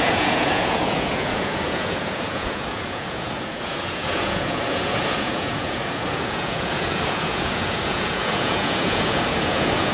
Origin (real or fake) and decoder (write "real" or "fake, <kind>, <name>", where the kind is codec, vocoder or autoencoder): fake, vocoder, Vocos